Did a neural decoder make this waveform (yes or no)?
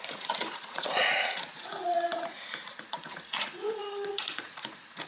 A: yes